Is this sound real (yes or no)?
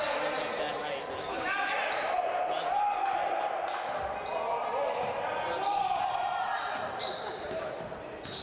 yes